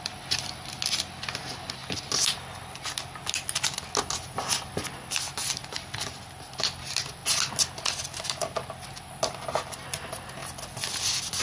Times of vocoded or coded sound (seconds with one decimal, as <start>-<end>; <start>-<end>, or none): none